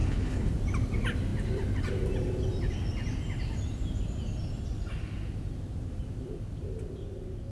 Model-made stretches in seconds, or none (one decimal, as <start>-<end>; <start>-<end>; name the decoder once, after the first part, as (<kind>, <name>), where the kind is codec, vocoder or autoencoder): 0.0-0.5 (codec, HILCodec)